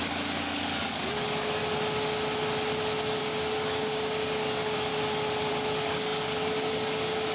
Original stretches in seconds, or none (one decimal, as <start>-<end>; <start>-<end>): 1.6-3.2; 4.9-5.5